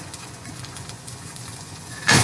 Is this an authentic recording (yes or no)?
no